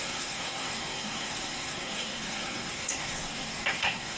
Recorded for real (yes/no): no